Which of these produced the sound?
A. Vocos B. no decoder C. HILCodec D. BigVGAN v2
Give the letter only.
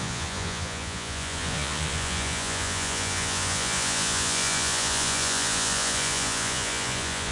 A